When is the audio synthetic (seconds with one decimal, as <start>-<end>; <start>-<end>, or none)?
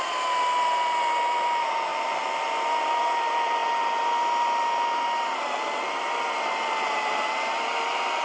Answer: none